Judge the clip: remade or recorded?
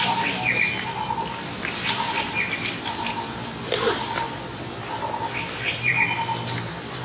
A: recorded